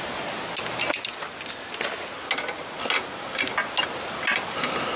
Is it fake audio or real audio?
real